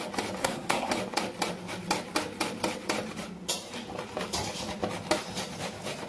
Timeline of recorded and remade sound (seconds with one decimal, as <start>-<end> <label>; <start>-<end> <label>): 0.0-0.4 recorded; 0.4-0.9 remade; 0.9-6.1 recorded